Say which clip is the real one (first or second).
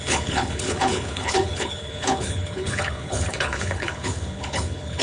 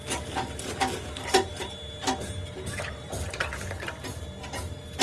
second